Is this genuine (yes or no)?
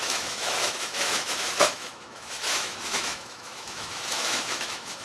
no